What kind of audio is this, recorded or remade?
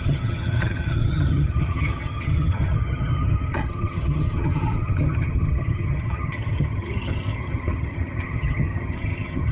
remade